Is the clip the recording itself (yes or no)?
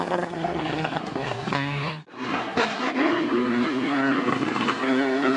no